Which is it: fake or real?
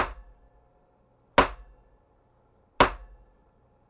real